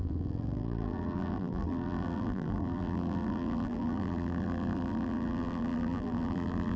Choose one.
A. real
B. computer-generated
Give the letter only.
B